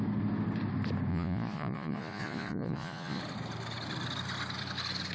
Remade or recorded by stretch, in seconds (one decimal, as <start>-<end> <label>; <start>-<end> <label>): 0.0-1.1 recorded; 1.1-3.2 remade; 3.2-5.1 recorded